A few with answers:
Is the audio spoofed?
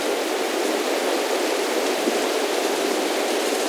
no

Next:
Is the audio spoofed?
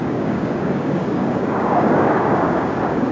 yes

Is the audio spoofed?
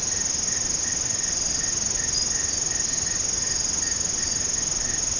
no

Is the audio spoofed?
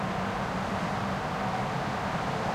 no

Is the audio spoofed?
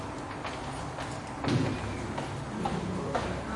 no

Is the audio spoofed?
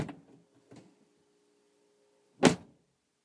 no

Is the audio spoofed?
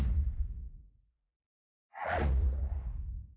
yes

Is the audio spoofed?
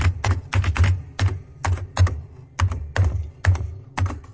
no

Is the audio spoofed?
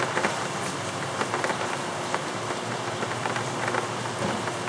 no